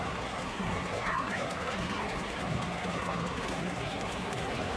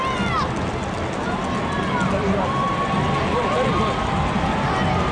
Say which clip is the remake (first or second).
first